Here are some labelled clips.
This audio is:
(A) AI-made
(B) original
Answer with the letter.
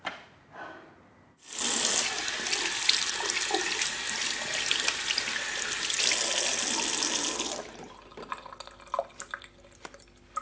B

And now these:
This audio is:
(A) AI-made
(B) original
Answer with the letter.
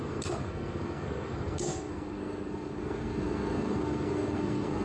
A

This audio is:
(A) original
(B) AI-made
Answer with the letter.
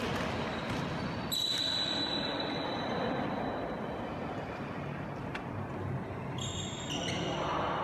A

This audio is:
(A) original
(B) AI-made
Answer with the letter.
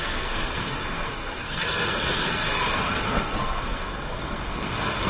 B